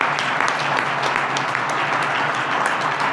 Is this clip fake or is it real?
real